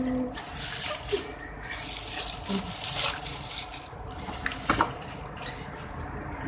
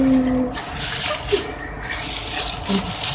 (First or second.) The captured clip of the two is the second